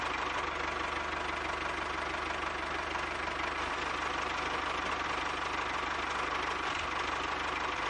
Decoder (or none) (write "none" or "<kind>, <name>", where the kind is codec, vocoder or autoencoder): none